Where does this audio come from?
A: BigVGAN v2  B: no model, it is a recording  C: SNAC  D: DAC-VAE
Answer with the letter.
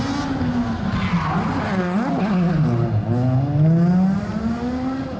B